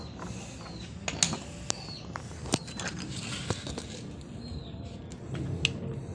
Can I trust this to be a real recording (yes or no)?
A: yes